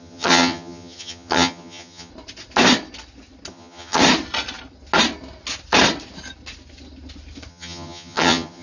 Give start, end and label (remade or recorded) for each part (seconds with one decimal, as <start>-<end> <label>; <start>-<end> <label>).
0.0-2.1 remade; 2.1-3.5 recorded; 3.5-4.0 remade; 4.0-7.5 recorded; 7.5-8.6 remade

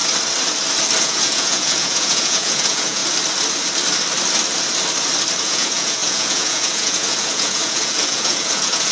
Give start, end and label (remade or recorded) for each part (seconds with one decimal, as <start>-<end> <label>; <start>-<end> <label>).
0.0-1.0 recorded; 1.0-3.0 remade; 3.0-5.4 recorded; 5.4-8.9 remade

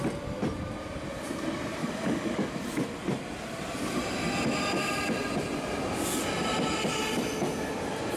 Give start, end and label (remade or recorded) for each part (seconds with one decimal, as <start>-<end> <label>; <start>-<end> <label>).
0.0-1.8 recorded; 1.8-2.5 remade; 2.5-8.2 recorded

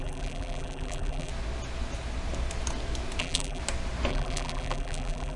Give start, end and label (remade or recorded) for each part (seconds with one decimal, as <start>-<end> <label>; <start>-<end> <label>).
0.0-1.3 remade; 1.3-3.2 recorded; 3.2-3.6 remade; 3.6-4.1 recorded; 4.1-5.4 remade